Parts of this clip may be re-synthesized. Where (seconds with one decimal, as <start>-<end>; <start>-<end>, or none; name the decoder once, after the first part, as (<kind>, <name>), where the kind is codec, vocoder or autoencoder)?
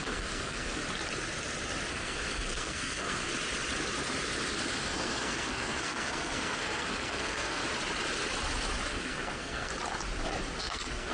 0.0-0.8 (codec, SNAC); 1.9-3.3; 4.8-7.6; 8.9-9.7; 10.6-11.1